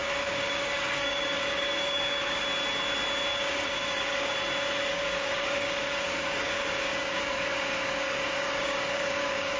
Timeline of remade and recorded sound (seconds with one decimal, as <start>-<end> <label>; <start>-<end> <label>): 0.0-2.4 remade; 2.4-3.3 recorded; 3.3-4.3 remade; 4.3-4.9 recorded; 4.9-9.6 remade